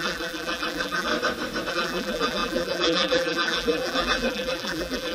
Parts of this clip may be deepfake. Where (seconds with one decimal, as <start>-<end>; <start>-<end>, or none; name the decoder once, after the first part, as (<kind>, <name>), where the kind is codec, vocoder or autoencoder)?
0.0-1.1 (vocoder, BigVGAN v2); 1.7-5.1